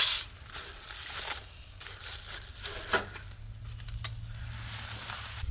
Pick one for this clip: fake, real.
real